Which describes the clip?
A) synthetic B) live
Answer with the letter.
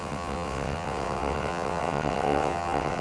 A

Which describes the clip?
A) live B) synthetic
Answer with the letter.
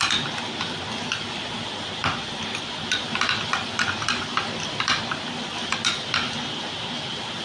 A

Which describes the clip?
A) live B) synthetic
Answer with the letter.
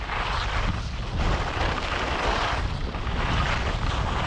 A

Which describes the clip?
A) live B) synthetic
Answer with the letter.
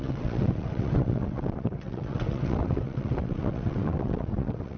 B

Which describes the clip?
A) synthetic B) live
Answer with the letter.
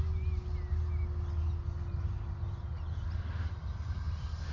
B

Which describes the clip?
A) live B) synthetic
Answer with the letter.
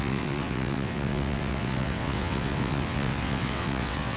B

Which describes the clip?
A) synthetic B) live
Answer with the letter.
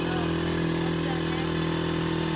B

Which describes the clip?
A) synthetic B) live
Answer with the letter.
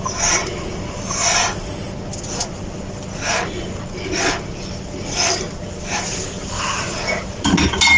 B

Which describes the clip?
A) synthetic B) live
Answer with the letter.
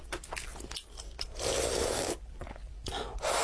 B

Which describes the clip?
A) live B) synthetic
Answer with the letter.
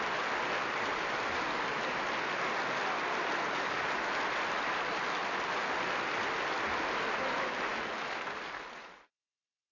A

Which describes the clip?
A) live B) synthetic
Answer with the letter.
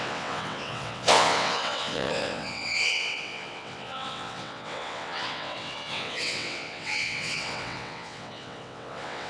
B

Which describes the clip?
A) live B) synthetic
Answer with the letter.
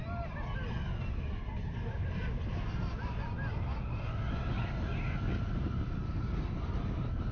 A